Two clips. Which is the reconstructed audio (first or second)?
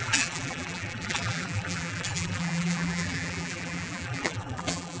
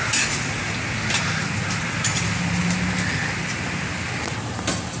first